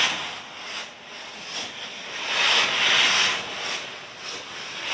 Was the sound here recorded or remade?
recorded